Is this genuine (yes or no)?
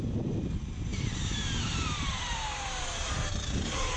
no